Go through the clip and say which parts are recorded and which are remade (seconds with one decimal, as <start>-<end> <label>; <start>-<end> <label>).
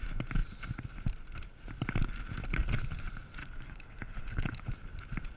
0.0-3.4 recorded; 3.4-4.7 remade; 4.7-5.4 recorded